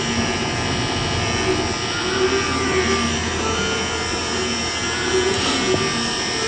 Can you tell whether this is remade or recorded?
recorded